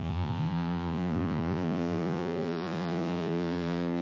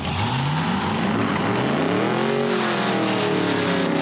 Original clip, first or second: second